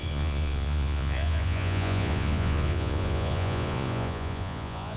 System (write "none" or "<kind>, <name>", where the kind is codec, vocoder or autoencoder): vocoder, Vocos